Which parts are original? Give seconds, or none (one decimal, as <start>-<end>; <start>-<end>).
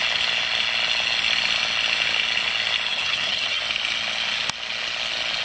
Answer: 0.0-2.9; 3.6-5.4